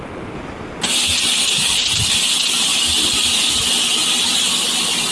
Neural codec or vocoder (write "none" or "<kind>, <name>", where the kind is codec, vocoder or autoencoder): none